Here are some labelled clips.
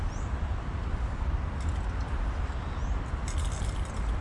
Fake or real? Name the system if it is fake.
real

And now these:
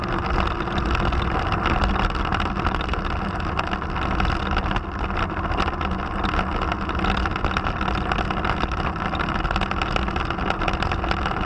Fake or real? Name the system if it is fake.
real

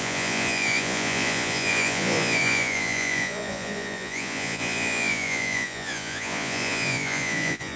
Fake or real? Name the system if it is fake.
fake, vocoder, Vocos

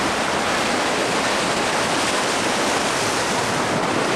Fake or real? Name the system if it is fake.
real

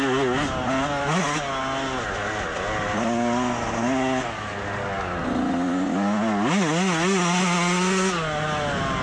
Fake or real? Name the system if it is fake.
real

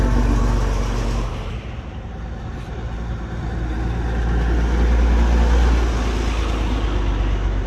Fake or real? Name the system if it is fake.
real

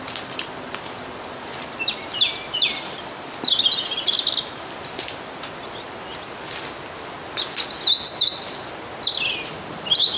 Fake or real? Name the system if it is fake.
real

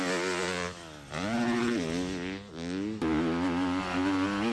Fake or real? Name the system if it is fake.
real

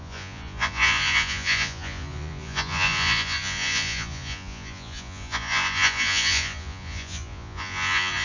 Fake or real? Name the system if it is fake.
fake, vocoder, Vocos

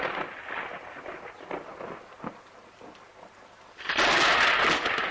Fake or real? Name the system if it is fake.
real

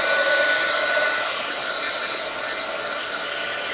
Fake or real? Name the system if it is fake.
real